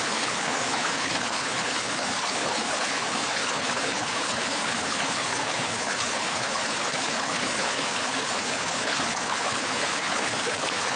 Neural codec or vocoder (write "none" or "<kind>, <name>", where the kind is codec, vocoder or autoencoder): codec, HILCodec